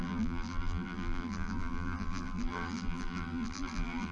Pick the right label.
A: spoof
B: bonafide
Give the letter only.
A